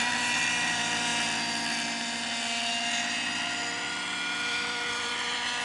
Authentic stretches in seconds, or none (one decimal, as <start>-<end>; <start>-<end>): 1.1-4.5